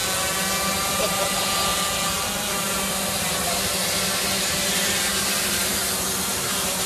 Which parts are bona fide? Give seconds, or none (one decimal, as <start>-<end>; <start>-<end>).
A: 0.0-1.0; 1.7-2.5